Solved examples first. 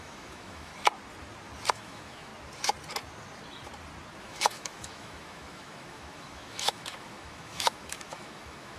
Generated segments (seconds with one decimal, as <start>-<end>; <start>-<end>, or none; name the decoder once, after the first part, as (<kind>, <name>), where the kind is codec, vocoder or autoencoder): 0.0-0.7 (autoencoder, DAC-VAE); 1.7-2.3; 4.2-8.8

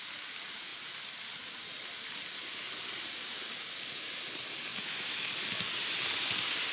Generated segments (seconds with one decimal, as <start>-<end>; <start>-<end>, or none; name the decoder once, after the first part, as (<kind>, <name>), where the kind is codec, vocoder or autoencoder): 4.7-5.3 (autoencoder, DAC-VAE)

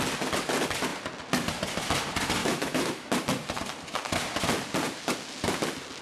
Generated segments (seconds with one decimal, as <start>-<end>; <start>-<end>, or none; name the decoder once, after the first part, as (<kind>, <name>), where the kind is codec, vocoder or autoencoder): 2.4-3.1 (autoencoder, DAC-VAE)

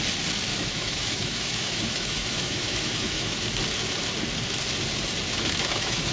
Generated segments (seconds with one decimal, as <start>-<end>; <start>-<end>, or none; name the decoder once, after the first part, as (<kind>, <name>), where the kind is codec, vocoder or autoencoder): 0.5-3.6 (autoencoder, DAC-VAE); 5.3-6.1

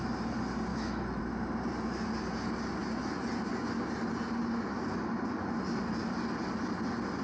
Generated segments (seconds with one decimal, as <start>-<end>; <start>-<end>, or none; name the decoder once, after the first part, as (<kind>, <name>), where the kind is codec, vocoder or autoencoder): 0.7-1.2 (autoencoder, DAC-VAE)